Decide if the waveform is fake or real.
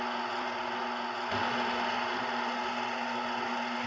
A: real